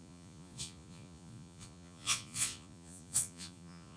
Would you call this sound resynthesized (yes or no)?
yes